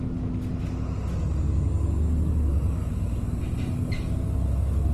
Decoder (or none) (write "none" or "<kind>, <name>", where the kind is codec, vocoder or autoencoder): none